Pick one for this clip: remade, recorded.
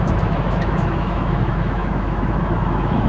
remade